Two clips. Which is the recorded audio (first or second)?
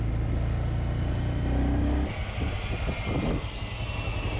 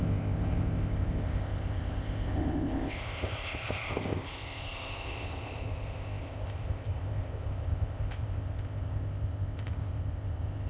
first